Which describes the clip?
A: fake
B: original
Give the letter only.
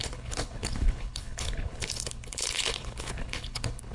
A